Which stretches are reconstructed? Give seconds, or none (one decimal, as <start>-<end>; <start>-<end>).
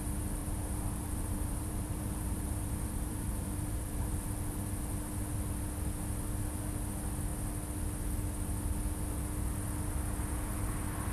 0.4-4.2